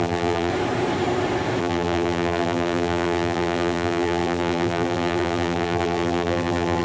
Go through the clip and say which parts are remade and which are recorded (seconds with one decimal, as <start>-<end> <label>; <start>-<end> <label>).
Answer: 0.0-0.5 remade; 0.5-1.6 recorded; 1.6-6.8 remade